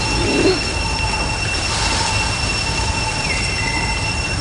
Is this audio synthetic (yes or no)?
no